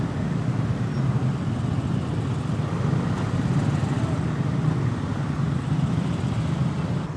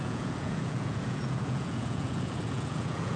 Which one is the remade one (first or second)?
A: second